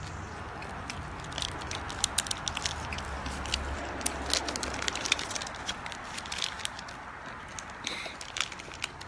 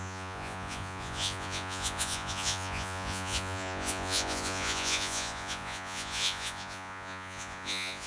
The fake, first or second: second